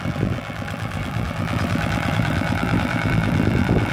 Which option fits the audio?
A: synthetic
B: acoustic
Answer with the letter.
A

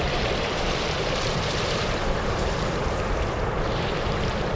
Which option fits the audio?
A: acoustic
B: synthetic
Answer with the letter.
B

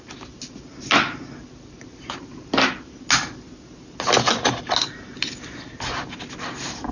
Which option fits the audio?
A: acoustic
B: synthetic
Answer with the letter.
A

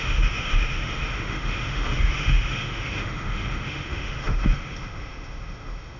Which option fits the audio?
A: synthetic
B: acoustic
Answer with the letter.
A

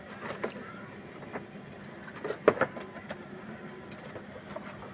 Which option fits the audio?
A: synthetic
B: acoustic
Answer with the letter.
B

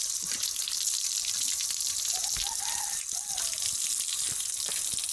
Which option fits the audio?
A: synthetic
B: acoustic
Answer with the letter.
B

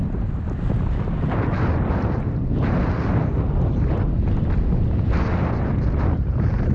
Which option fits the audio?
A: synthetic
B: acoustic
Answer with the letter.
B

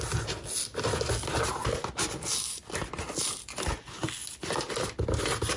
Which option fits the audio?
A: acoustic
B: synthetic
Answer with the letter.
A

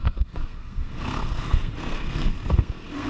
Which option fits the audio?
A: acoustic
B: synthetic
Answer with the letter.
B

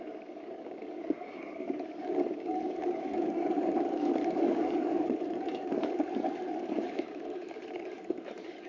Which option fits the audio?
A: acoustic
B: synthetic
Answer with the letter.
B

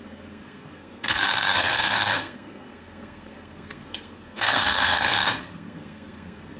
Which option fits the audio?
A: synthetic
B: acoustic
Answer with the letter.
A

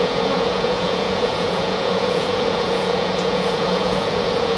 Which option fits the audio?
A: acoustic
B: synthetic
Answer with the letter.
B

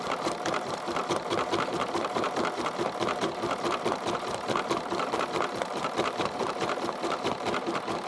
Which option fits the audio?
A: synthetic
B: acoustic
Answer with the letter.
A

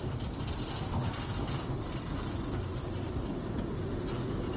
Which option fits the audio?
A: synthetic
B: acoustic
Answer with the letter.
B